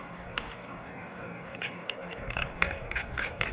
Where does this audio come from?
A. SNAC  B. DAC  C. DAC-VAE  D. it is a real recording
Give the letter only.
B